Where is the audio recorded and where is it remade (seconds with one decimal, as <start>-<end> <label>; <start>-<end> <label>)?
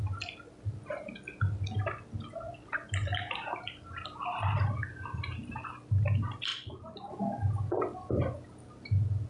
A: 0.0-9.3 recorded